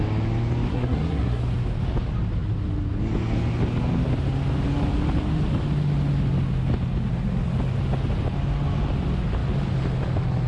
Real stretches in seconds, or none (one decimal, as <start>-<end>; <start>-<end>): 0.0-0.7; 1.4-10.5